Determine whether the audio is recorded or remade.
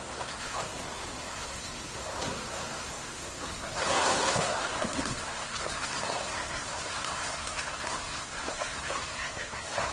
remade